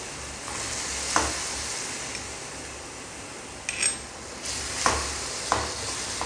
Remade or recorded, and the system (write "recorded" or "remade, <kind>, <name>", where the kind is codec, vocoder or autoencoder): recorded